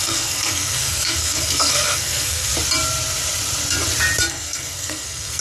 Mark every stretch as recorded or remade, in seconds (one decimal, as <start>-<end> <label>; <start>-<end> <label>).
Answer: 0.0-2.5 remade; 2.5-4.3 recorded; 4.3-5.4 remade